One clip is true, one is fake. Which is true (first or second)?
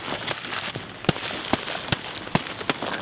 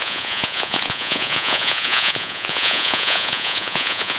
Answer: first